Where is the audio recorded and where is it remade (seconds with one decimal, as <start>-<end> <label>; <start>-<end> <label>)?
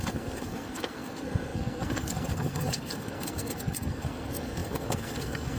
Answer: 0.0-5.6 remade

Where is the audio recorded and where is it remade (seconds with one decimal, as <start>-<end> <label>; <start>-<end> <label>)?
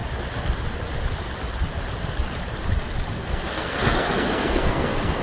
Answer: 0.0-3.1 recorded; 3.1-5.2 remade